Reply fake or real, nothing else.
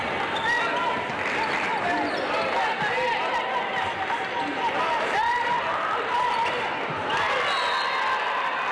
real